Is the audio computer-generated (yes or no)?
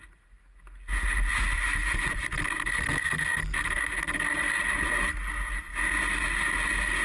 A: no